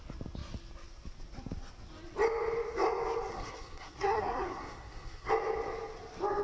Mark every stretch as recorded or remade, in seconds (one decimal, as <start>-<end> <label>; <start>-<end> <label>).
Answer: 0.0-3.3 recorded; 3.3-5.3 remade; 5.3-6.4 recorded